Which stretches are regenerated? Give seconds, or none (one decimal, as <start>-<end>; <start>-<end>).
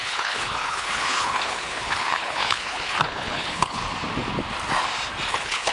0.0-3.8; 5.3-5.7